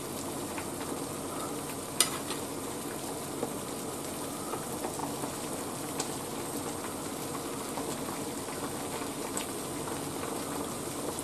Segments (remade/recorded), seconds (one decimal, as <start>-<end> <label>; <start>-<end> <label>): 0.0-11.2 recorded